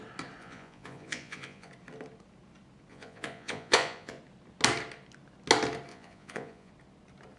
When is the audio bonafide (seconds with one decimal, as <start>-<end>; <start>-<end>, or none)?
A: 0.0-0.4; 1.7-2.9; 4.2-5.9; 6.7-7.4